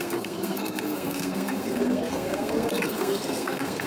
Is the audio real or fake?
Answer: fake